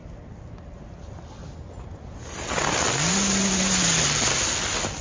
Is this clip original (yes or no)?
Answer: yes